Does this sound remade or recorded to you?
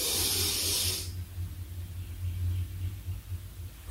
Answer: recorded